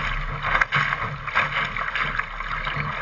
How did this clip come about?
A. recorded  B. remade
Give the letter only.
A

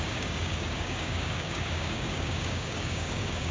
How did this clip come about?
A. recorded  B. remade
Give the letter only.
B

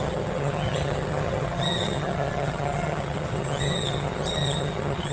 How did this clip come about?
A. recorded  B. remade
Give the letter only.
B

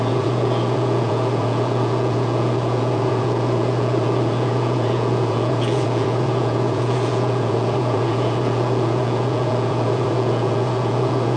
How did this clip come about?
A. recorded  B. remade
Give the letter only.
B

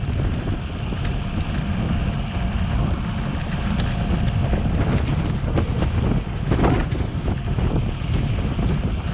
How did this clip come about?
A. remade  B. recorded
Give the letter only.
B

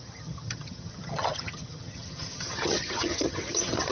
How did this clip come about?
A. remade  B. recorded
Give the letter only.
A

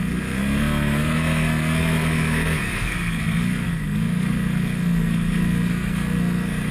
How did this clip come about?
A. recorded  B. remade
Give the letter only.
B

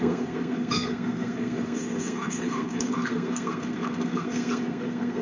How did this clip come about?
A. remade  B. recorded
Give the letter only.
A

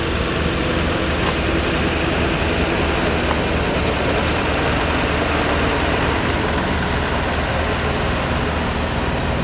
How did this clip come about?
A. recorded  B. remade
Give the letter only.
A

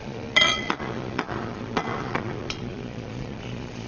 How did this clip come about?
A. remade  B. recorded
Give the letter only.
A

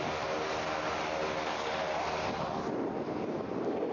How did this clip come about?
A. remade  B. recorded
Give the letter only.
B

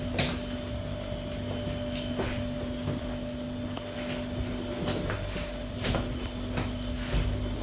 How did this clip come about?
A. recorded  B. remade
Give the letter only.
A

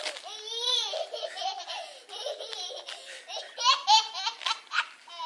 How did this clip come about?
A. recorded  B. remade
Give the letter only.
A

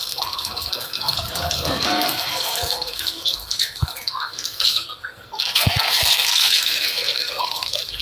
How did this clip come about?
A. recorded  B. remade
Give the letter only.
B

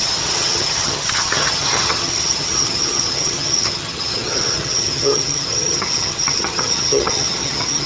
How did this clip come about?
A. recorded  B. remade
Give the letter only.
B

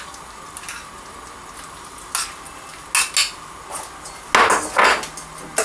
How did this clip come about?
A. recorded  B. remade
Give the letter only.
A